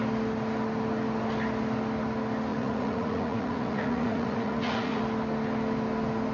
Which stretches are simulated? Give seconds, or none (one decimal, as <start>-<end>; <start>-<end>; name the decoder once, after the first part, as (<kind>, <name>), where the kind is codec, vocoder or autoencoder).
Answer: 2.5-5.0 (vocoder, Vocos)